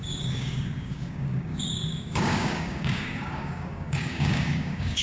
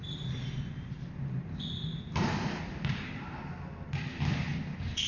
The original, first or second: second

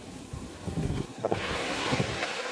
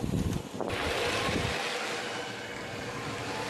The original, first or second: second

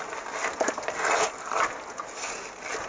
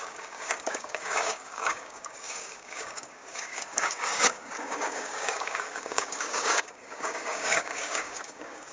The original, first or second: first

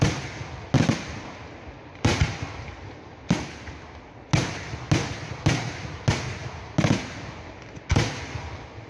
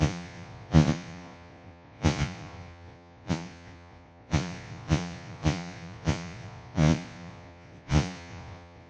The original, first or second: first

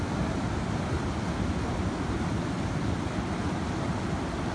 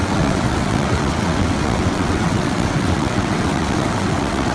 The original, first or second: first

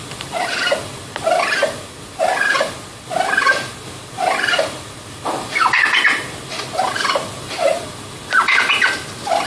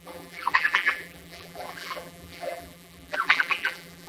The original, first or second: first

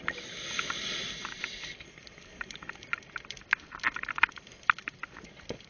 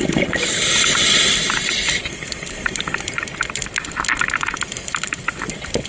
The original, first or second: first